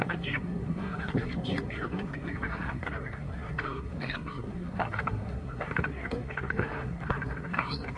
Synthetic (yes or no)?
yes